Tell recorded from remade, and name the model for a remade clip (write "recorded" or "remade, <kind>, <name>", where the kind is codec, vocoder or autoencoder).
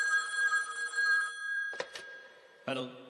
remade, vocoder, BigVGAN v2